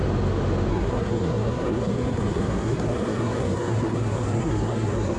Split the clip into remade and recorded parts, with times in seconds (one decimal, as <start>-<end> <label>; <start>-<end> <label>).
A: 0.0-0.7 recorded; 0.7-5.2 remade